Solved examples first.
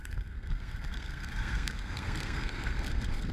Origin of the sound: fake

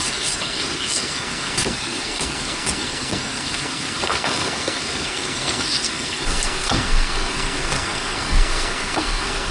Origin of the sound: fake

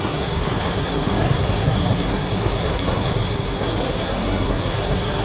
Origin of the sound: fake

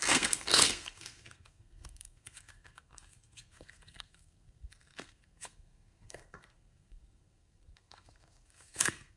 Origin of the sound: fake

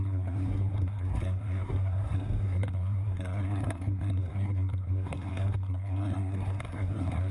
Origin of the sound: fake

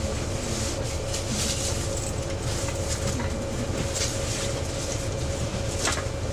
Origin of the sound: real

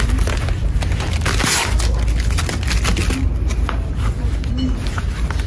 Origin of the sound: real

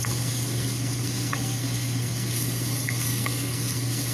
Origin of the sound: fake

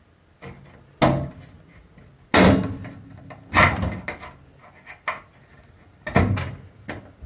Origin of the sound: real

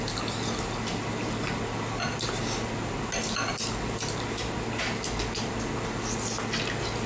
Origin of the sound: real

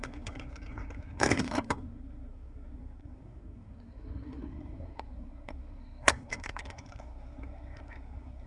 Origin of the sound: fake